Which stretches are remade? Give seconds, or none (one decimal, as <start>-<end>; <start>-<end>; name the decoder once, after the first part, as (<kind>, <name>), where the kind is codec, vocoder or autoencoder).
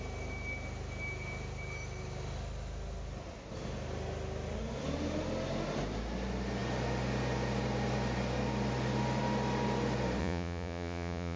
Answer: 10.2-11.4 (vocoder, Vocos)